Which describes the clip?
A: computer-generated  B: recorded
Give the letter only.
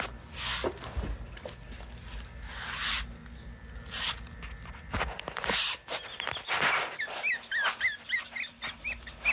B